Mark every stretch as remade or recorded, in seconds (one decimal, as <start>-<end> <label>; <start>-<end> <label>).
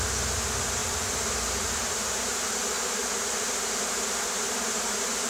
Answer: 0.0-0.8 recorded; 0.8-2.1 remade; 2.1-3.0 recorded; 3.0-4.5 remade; 4.5-5.3 recorded